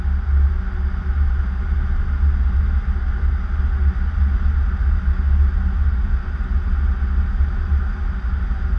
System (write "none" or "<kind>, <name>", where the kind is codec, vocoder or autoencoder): none